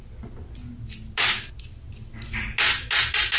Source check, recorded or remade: recorded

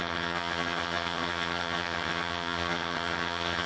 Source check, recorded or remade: remade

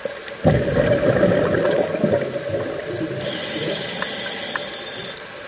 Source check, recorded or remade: recorded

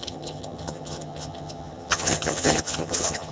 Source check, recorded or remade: remade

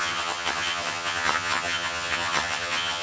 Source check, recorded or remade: remade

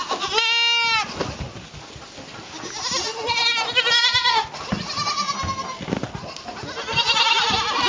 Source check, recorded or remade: recorded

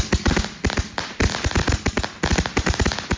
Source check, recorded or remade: recorded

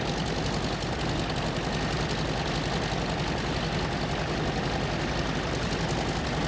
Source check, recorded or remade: recorded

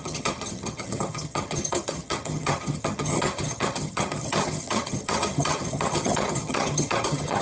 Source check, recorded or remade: remade